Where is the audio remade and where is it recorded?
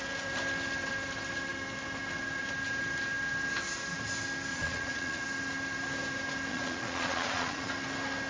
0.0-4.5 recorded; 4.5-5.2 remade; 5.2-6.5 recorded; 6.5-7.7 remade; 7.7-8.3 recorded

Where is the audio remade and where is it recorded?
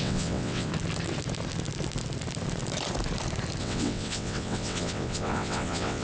0.0-0.7 remade; 0.7-3.6 recorded; 3.6-6.0 remade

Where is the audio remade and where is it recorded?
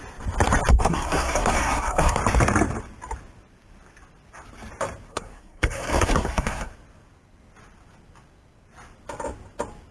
0.0-0.7 recorded; 0.7-2.2 remade; 2.2-5.1 recorded; 5.1-6.7 remade; 6.7-9.9 recorded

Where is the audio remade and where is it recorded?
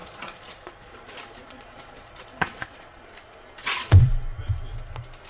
0.0-3.0 remade; 3.0-3.6 recorded; 3.6-4.1 remade; 4.1-5.3 recorded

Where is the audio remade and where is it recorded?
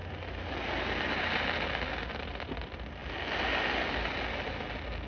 0.0-5.1 recorded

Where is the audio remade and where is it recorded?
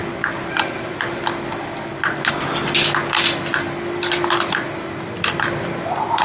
0.0-6.2 recorded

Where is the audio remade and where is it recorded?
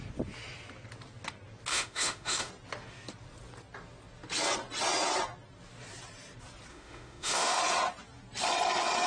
0.0-1.7 recorded; 1.7-2.5 remade; 2.5-6.7 recorded; 6.7-7.6 remade; 7.6-9.1 recorded